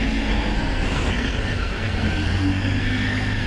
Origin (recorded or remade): remade